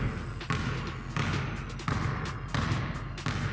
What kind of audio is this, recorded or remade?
recorded